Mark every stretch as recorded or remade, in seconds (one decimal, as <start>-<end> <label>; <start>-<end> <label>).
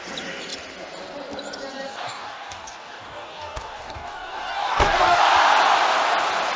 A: 0.0-1.9 recorded; 1.9-5.2 remade; 5.2-6.6 recorded